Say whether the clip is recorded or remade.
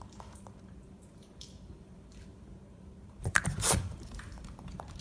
remade